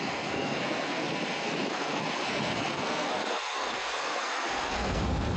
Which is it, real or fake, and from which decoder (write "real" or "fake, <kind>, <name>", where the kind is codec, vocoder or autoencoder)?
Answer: fake, codec, SNAC